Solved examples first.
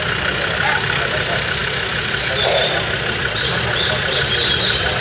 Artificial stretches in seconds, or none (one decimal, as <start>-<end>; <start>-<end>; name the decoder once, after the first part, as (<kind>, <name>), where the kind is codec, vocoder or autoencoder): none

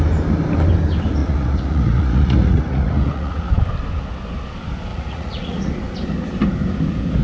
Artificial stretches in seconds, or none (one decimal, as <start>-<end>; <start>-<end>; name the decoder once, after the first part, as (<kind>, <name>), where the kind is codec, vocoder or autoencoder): 1.2-3.5 (vocoder, Vocos); 4.9-5.7

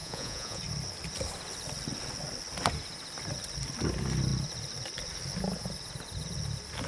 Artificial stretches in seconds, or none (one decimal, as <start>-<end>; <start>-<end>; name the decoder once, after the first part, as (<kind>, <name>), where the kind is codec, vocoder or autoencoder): 0.0-0.6 (vocoder, Vocos)